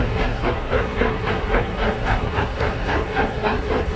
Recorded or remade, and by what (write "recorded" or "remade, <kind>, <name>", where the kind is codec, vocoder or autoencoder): remade, codec, SNAC